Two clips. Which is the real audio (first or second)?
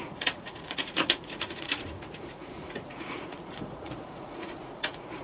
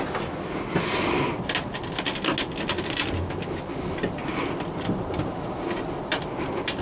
second